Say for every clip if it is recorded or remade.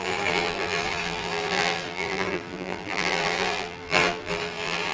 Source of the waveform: remade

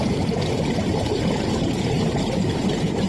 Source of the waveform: remade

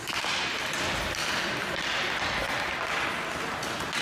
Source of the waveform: recorded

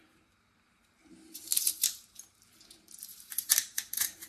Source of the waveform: remade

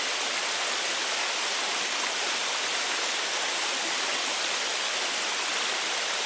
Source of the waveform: recorded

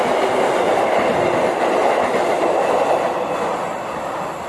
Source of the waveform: recorded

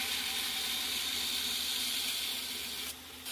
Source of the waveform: recorded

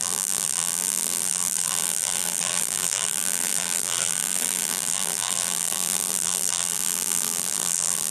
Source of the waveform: remade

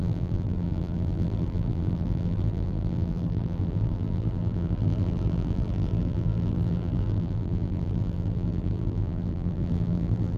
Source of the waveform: remade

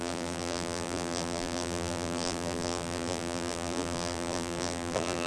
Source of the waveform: remade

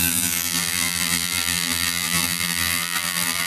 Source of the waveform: remade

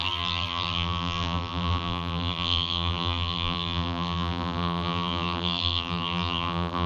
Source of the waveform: remade